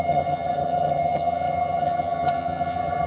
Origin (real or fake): fake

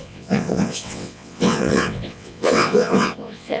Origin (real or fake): fake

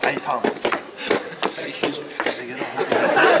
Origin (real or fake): real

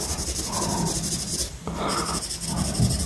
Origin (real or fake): real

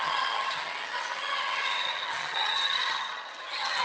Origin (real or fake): fake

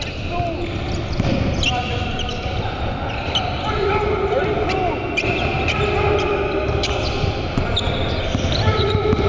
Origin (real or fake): real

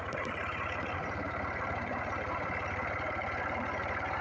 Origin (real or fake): fake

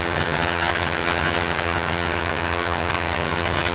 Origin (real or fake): fake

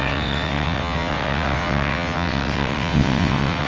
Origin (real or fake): fake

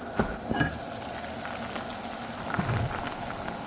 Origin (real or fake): real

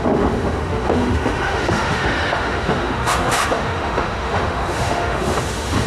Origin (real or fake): fake